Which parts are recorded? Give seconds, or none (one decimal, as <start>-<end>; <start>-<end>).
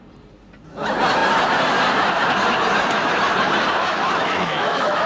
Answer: 0.0-3.8